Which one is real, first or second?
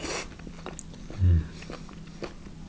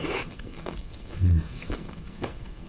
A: first